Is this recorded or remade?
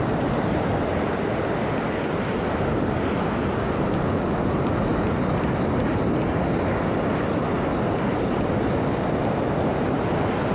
recorded